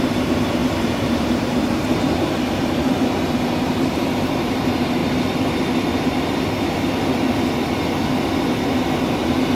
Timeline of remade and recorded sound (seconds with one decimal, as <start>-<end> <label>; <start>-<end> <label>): 0.0-5.0 remade; 5.0-8.9 recorded; 8.9-9.5 remade